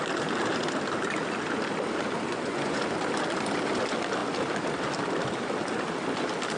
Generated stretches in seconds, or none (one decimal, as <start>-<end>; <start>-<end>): 2.3-2.8